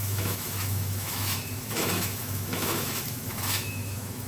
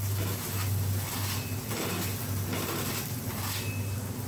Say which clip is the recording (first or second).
second